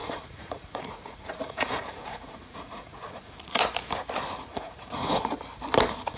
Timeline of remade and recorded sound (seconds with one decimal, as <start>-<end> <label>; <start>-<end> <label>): 0.0-3.7 remade; 3.7-4.5 recorded; 4.5-5.3 remade; 5.3-6.2 recorded